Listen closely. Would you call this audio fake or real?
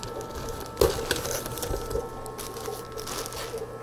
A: real